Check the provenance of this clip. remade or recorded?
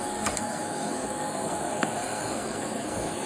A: remade